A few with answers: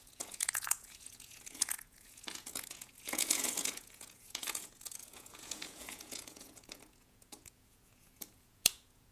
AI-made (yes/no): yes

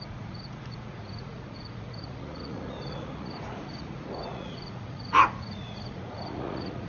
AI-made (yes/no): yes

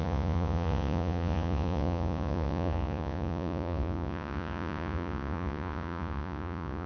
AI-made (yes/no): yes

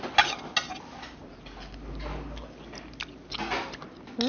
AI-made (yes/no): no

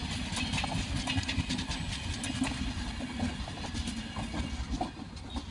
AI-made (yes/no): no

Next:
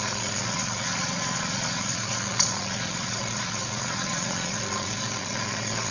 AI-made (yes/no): yes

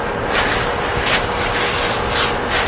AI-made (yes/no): no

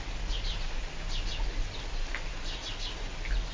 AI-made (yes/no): no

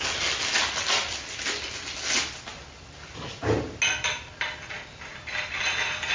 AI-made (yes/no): no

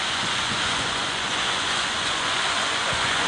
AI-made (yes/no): yes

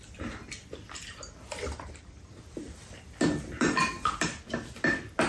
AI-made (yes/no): no